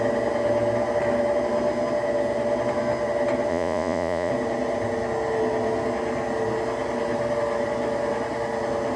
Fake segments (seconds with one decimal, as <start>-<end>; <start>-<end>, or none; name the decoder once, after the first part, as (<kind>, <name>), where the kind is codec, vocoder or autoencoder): 3.5-4.3 (vocoder, Vocos)